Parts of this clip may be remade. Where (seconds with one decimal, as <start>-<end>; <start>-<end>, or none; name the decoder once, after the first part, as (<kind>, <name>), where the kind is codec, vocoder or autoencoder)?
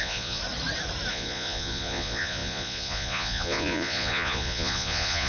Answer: 0.0-0.4 (vocoder, Vocos); 1.1-5.3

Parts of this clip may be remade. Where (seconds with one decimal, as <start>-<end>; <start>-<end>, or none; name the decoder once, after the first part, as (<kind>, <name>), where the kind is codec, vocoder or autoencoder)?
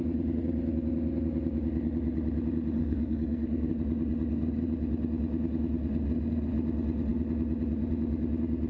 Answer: 2.8-3.7 (codec, SNAC)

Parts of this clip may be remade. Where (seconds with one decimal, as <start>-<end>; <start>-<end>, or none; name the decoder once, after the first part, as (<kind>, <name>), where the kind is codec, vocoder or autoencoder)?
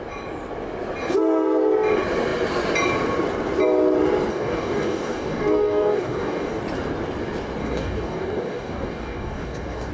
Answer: 4.3-6.6 (codec, DAC); 7.6-9.9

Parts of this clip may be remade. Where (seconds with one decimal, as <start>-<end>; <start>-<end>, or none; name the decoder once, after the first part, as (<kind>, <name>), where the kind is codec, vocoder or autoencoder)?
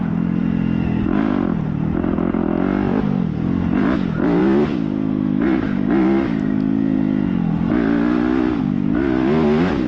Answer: none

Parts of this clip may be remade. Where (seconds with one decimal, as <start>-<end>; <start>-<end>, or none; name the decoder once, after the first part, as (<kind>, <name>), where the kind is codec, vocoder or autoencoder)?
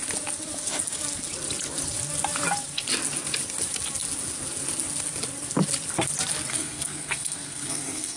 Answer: 6.5-8.2 (codec, SNAC)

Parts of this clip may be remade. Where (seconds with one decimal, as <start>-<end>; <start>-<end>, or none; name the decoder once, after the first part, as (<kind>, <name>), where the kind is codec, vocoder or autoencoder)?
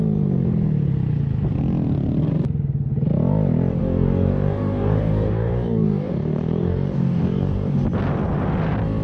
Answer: 3.8-7.8 (codec, DAC)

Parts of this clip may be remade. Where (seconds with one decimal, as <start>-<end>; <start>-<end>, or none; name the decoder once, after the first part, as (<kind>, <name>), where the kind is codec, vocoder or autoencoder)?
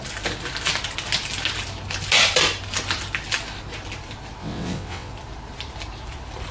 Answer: 4.4-5.1 (vocoder, WaveNeXt)